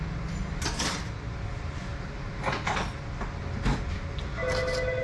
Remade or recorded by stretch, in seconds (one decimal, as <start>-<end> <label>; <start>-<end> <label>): 0.0-5.0 recorded